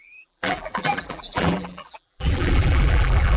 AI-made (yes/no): yes